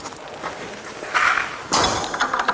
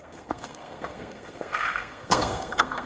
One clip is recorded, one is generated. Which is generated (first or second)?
second